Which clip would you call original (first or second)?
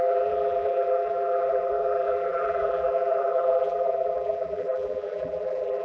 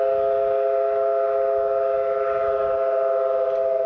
second